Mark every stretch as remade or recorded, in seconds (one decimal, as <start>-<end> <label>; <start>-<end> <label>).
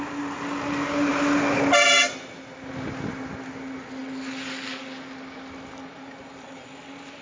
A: 0.0-7.2 recorded